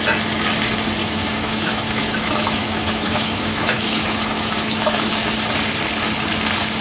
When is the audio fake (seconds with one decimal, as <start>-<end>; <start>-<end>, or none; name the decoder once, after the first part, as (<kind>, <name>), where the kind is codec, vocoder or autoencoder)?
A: 1.0-5.1 (autoencoder, DAC-VAE)

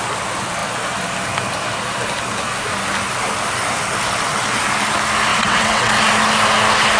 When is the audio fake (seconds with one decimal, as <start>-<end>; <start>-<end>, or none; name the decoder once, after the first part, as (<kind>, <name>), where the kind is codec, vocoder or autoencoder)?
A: 5.3-5.9 (vocoder, WaveNeXt)